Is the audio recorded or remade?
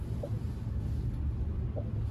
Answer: recorded